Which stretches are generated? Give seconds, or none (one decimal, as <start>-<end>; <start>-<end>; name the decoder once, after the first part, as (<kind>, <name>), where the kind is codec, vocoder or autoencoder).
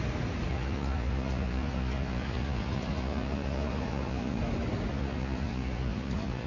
0.5-4.4 (vocoder, Vocos); 4.9-6.5